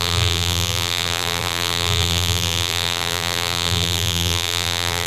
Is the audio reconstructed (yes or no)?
yes